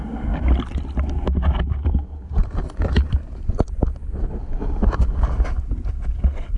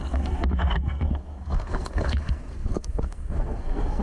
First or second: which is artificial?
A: second